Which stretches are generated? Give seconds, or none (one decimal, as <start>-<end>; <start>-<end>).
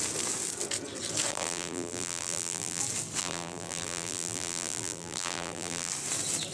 1.3-2.8; 3.2-5.9